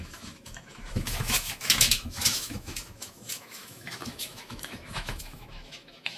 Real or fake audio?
fake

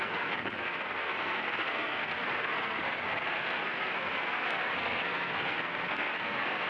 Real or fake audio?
fake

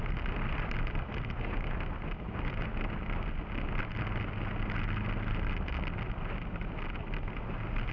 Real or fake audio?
real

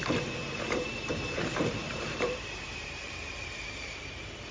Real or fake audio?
fake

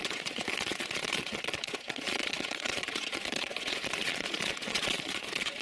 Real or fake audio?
fake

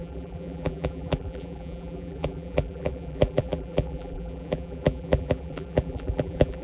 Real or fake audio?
fake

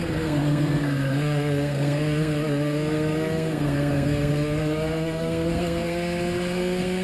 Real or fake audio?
fake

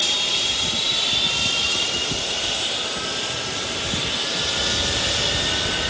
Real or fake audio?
real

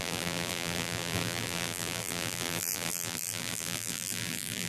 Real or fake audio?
fake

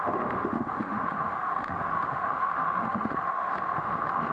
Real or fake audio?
fake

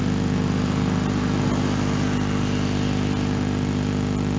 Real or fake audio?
real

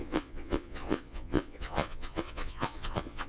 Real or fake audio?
fake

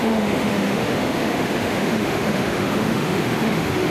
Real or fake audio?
fake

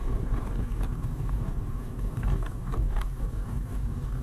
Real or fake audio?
fake